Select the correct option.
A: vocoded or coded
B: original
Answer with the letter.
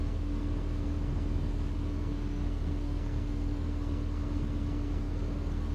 A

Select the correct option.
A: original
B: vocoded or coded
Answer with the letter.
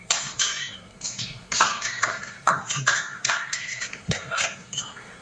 B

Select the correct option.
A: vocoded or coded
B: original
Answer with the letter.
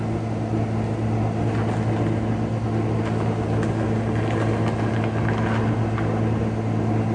B